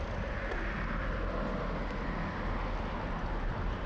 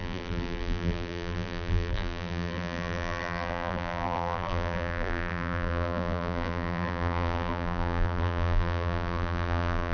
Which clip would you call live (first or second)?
first